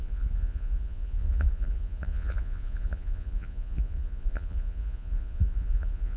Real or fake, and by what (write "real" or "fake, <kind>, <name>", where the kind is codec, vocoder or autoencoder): fake, vocoder, Vocos